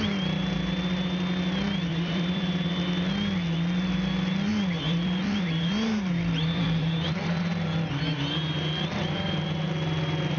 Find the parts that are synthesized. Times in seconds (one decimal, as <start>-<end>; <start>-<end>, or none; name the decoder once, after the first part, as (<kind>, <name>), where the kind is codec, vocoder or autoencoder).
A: 1.9-2.7 (vocoder, BigVGAN v2); 4.5-7.4